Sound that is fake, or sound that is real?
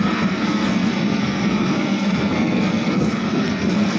fake